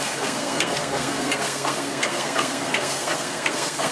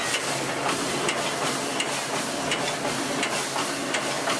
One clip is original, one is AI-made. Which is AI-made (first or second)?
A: first